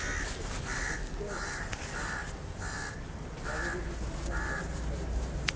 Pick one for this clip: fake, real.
real